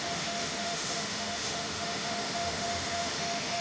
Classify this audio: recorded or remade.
remade